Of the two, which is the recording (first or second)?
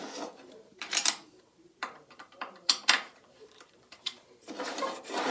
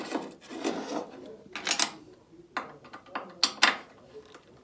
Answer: second